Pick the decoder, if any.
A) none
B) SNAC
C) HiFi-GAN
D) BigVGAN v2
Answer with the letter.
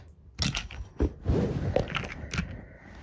A